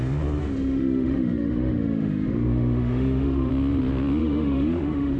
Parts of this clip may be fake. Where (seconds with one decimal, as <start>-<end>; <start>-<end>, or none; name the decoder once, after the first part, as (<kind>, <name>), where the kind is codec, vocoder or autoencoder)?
0.4-3.5 (autoencoder, DAC-VAE); 4.2-5.2